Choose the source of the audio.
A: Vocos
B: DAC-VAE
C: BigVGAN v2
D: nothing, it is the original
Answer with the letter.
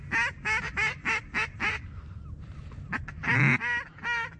D